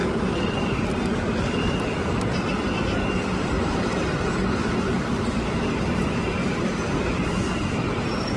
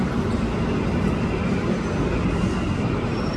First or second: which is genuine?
second